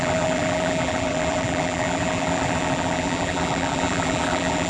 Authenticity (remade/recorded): remade